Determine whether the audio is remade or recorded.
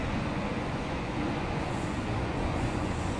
remade